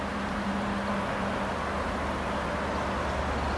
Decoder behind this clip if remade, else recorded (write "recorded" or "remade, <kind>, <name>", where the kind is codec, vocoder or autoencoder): recorded